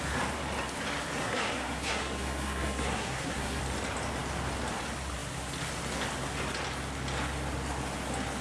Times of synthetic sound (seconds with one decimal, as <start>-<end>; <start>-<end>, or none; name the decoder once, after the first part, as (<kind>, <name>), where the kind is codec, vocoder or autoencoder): 1.2-3.6 (codec, SNAC)

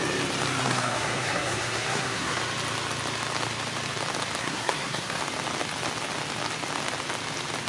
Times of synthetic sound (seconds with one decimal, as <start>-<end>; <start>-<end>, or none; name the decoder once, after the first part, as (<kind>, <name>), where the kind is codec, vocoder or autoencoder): 0.6-2.4 (codec, SNAC); 4.4-5.2

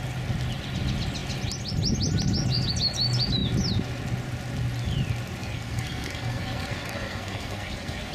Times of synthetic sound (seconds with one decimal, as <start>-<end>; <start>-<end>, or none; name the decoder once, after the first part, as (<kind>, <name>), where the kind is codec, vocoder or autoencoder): 5.4-8.1 (codec, SNAC)

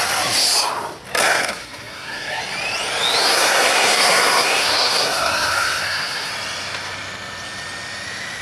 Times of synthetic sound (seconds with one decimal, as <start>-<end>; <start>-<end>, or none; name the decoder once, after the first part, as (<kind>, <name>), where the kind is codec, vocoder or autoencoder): 1.2-2.4 (codec, SNAC); 3.2-6.3

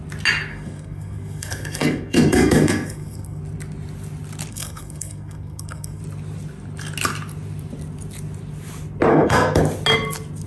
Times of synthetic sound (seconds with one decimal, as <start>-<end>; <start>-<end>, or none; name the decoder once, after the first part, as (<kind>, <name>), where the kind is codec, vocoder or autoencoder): 0.5-3.4 (codec, SNAC); 4.5-6.0; 9.1-9.6

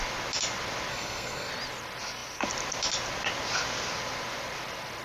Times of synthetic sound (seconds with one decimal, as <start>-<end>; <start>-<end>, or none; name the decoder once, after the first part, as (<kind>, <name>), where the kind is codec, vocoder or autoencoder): 0.9-1.5 (codec, SNAC)

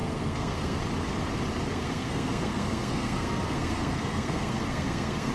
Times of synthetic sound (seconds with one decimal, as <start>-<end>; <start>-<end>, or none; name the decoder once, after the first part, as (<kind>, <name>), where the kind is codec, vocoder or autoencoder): 0.0-0.8 (codec, SNAC); 1.7-5.3

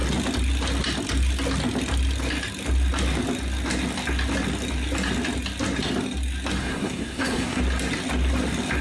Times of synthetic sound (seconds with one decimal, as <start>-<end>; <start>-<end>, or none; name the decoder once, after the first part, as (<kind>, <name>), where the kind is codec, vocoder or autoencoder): 6.6-7.6 (codec, SNAC)